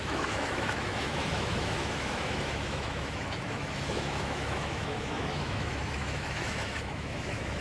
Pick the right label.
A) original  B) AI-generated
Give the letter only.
B